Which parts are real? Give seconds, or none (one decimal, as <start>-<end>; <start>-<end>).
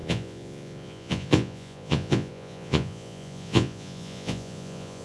none